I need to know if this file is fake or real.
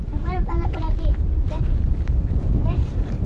fake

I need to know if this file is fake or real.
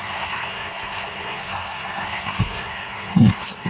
fake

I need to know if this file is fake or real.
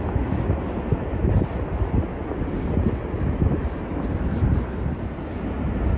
real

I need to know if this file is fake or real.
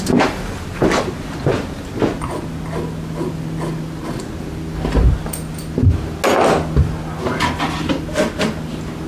real